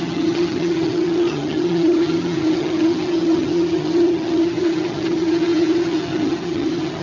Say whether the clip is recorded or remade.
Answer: remade